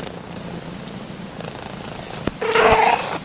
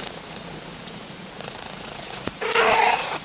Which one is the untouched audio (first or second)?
first